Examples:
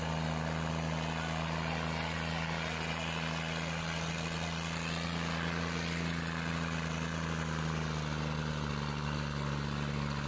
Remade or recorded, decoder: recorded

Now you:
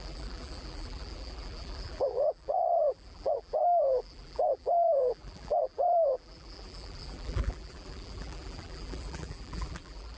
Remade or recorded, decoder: remade, vocoder, BigVGAN v2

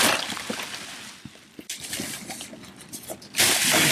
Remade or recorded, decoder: recorded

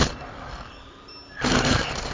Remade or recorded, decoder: remade, vocoder, BigVGAN v2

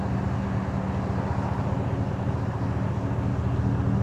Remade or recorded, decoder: recorded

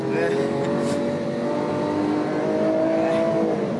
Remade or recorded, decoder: recorded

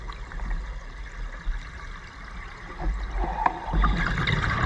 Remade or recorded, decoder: recorded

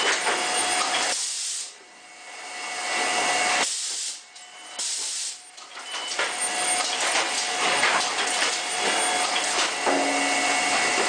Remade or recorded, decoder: recorded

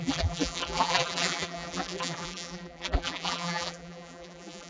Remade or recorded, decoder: remade, vocoder, BigVGAN v2